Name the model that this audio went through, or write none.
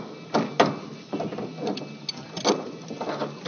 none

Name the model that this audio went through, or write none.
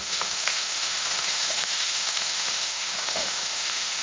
autoencoder, DAC-VAE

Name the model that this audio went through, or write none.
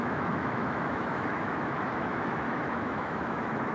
autoencoder, DAC-VAE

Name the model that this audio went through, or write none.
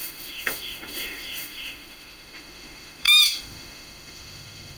autoencoder, DAC-VAE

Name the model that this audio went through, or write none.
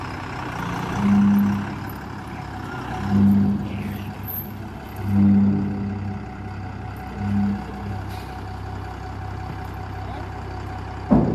none